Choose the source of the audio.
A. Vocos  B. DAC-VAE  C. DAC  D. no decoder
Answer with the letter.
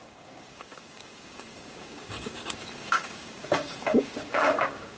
C